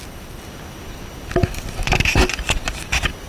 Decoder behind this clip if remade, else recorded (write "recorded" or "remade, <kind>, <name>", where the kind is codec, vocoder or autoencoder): recorded